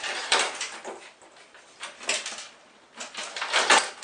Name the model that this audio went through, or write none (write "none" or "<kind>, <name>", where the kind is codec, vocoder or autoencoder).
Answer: none